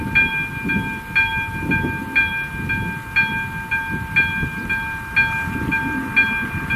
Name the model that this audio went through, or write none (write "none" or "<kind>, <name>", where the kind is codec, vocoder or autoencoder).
none